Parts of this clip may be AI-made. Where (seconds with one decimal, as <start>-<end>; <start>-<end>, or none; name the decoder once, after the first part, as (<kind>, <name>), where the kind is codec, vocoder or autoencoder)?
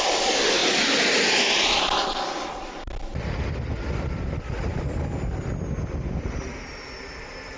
none